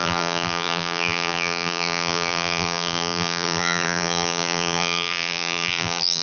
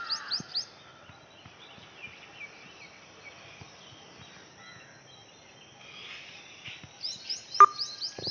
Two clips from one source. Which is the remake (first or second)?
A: first